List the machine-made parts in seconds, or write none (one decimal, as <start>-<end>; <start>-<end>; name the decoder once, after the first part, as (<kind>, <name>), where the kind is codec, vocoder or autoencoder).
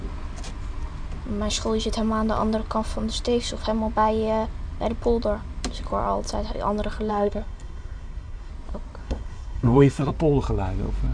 7.1-8.5 (codec, SNAC); 9.0-10.1